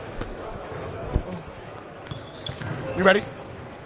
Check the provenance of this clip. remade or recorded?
remade